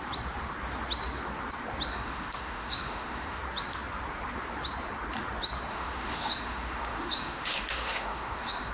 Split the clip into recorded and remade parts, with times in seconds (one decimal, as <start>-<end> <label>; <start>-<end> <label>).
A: 0.0-1.9 recorded; 1.9-3.4 remade; 3.4-5.7 recorded; 5.7-8.7 remade